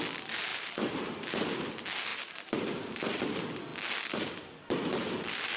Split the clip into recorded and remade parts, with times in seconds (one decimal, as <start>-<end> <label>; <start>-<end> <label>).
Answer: 0.0-0.5 recorded; 0.5-1.7 remade; 1.7-2.1 recorded; 2.1-3.0 remade; 3.0-5.6 recorded